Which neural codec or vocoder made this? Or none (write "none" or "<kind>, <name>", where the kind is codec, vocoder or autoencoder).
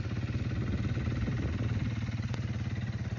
none